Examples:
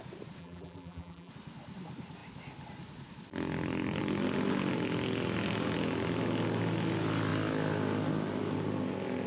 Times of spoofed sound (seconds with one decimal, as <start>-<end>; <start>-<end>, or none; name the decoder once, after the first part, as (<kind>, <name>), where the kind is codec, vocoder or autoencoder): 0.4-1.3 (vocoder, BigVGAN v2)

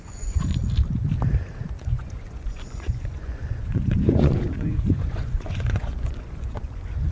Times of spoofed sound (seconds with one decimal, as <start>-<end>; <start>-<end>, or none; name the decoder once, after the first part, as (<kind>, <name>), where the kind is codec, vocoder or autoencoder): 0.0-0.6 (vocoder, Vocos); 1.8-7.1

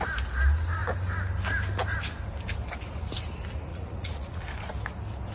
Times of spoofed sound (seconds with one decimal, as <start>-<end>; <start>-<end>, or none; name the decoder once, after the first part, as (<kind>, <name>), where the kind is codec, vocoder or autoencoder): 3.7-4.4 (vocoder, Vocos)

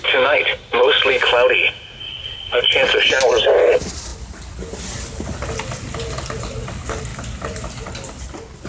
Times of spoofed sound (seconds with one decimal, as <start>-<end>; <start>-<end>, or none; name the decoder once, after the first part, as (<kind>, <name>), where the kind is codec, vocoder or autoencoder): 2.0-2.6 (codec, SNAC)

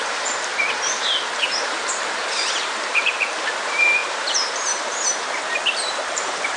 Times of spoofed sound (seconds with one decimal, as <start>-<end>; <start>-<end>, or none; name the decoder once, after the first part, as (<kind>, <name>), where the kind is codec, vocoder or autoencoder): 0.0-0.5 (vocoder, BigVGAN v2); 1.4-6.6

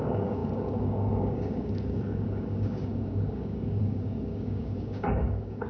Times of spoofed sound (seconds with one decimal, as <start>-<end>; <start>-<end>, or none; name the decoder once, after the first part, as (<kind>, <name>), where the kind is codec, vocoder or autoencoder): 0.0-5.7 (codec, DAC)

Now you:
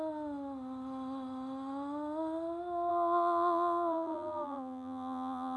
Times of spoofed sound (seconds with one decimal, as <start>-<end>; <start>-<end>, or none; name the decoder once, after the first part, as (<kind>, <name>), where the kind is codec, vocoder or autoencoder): 2.9-5.6 (vocoder, BigVGAN v2)